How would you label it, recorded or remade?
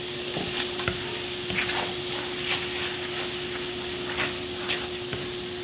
recorded